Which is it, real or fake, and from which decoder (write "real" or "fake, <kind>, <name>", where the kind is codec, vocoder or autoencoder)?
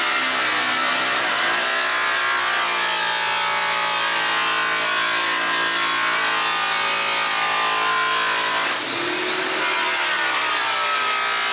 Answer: real